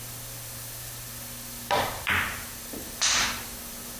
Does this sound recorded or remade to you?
recorded